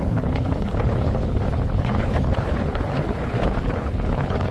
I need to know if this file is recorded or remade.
remade